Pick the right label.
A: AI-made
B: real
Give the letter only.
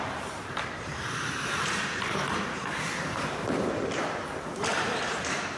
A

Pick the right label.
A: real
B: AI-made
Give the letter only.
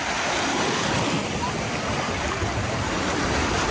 A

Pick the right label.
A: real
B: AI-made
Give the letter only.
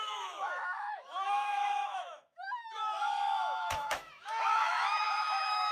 B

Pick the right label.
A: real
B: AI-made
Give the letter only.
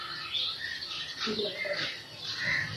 A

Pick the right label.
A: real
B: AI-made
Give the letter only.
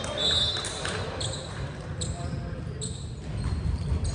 B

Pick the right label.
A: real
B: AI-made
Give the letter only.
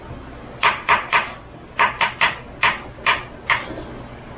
A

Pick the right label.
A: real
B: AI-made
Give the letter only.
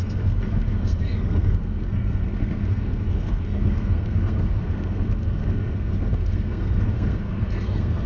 B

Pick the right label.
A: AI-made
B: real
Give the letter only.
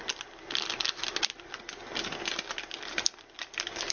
B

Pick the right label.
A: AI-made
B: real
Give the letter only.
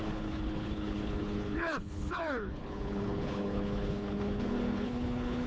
A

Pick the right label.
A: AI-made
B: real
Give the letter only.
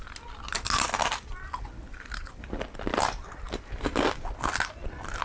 B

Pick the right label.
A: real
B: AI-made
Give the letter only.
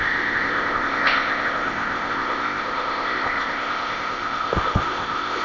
B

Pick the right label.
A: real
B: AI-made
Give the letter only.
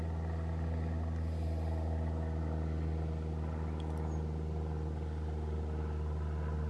A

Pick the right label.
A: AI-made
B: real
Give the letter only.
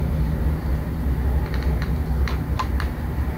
B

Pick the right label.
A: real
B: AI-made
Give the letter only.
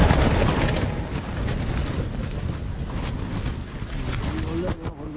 A